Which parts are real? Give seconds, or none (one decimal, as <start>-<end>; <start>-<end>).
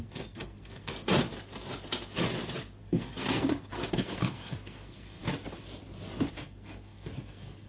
0.9-2.8; 5.2-6.3